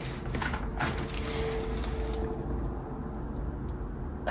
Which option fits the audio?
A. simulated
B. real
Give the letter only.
B